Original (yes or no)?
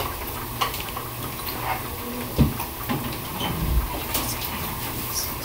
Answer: yes